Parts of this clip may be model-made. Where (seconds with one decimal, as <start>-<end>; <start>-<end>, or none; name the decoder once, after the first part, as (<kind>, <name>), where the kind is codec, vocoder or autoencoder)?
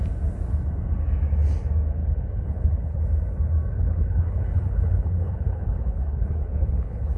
2.0-3.0 (codec, HILCodec); 3.7-7.2